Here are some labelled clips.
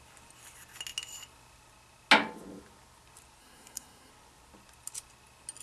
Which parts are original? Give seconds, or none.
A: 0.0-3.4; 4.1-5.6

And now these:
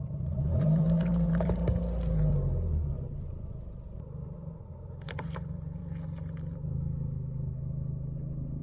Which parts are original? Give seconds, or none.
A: 1.6-4.6; 5.8-8.6

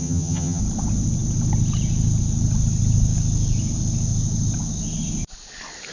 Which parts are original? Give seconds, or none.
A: 0.6-5.9

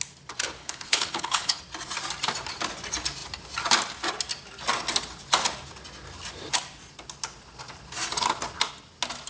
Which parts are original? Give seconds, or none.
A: 0.0-0.6; 1.6-9.3

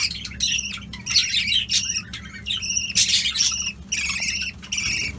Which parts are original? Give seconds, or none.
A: 0.0-5.2

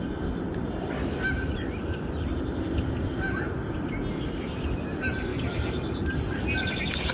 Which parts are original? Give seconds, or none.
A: 0.0-7.1

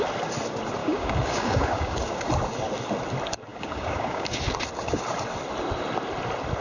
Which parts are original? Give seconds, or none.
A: 0.0-0.8; 2.3-3.5; 4.4-6.6

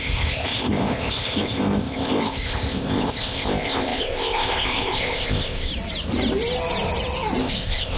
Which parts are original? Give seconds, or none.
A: 5.7-7.4